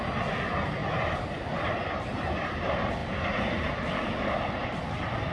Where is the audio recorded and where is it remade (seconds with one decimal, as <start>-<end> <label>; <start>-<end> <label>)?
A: 0.0-0.8 recorded; 0.8-1.8 remade; 1.8-5.3 recorded